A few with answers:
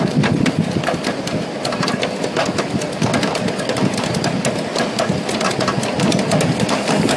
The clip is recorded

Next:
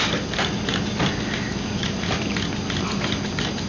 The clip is recorded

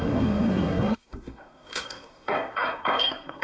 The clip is remade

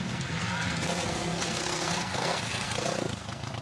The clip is remade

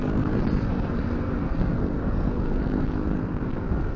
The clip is remade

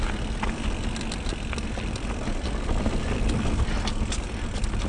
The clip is recorded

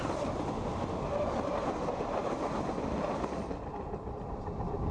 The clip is recorded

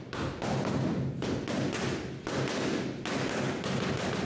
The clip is recorded